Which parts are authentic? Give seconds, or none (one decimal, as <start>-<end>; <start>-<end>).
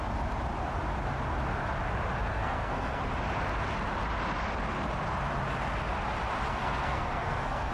0.0-2.3; 3.0-6.5